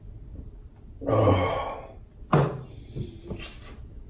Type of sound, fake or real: real